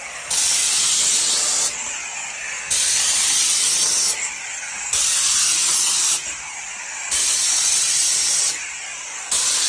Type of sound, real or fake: real